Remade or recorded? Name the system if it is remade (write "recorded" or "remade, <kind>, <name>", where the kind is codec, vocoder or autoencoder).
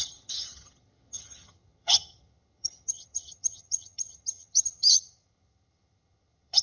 remade, vocoder, HiFi-GAN